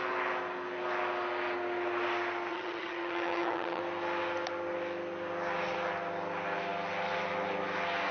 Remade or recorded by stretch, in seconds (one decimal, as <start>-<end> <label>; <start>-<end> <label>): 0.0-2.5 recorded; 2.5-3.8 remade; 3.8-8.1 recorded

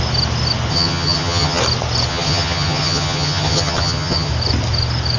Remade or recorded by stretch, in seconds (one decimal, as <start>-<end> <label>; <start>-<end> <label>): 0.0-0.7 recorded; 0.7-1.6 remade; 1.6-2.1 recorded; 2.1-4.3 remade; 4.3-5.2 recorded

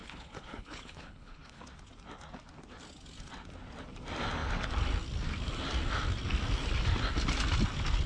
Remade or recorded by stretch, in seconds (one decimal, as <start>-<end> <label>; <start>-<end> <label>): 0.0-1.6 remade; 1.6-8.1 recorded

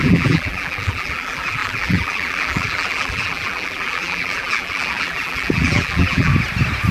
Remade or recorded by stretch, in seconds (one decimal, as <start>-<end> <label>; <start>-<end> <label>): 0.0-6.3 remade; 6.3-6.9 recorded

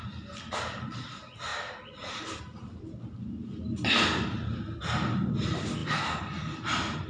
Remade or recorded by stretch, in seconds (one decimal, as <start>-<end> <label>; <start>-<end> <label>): 0.0-7.1 recorded